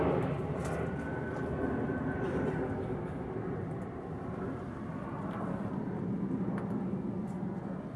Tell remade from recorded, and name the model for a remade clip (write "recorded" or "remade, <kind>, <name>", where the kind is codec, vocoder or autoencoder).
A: recorded